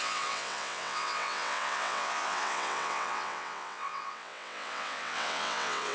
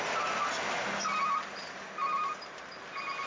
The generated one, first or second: first